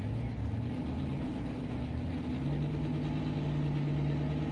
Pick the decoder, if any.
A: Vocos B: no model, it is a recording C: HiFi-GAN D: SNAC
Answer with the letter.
B